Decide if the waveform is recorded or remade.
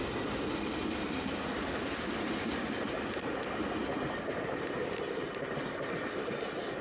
recorded